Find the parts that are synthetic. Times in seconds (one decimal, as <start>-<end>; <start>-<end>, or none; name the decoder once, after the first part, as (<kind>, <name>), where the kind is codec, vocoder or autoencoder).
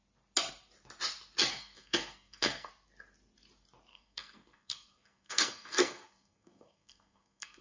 1.5-2.7 (codec, SNAC); 3.9-7.6